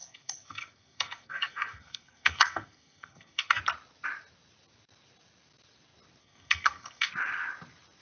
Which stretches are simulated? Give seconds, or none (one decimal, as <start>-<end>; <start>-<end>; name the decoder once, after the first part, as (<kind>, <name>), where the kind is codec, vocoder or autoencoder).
0.0-3.6 (codec, SNAC); 6.2-7.1